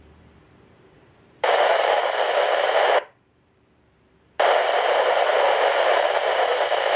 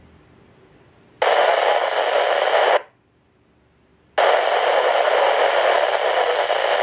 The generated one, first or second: first